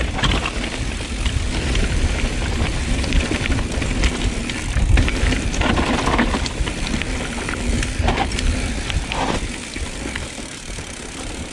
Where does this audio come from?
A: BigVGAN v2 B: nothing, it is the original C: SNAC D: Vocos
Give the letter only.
A